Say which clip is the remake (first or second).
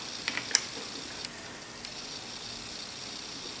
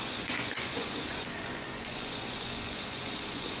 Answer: second